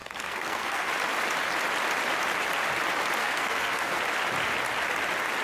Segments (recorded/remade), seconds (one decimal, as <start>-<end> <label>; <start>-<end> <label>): 0.0-0.9 remade; 0.9-3.2 recorded; 3.2-4.0 remade; 4.0-5.4 recorded